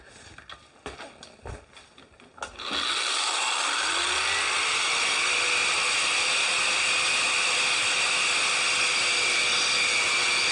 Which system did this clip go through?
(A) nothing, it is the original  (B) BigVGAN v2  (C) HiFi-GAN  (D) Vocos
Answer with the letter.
A